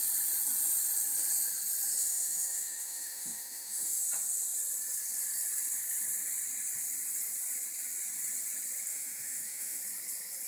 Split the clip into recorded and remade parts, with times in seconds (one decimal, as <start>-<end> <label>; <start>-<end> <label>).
0.0-2.0 recorded; 2.0-4.0 remade; 4.0-8.9 recorded; 8.9-9.8 remade; 9.8-10.5 recorded